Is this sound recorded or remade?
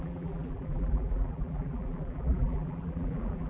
remade